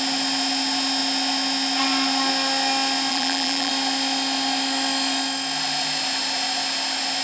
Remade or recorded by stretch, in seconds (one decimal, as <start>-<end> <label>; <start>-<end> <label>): 0.0-3.1 recorded; 3.1-3.7 remade; 3.7-7.2 recorded